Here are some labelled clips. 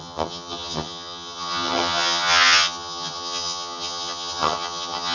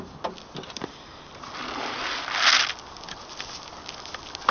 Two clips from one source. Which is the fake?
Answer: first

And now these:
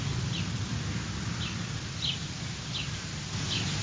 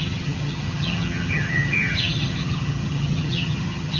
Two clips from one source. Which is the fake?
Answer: second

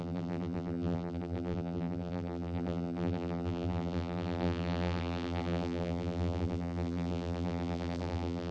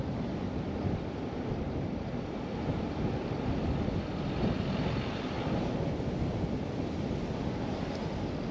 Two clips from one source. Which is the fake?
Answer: first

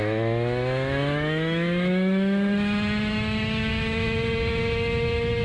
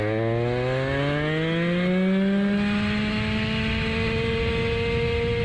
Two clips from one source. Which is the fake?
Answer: first